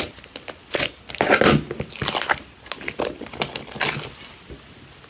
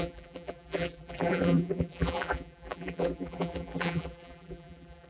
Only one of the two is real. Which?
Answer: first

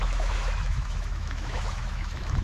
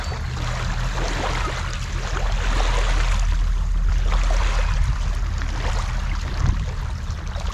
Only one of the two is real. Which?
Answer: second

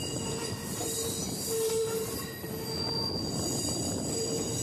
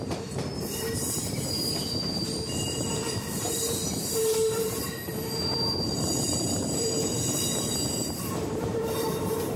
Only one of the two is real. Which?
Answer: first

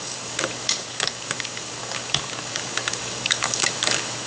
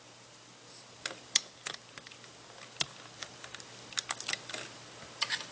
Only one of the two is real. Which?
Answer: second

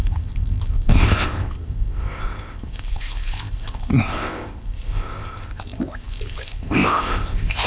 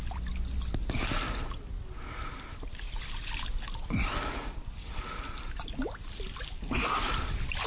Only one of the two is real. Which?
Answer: second